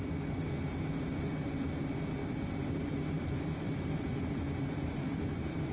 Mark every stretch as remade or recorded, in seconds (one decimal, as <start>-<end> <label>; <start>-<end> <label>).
0.0-2.2 recorded; 2.2-5.7 remade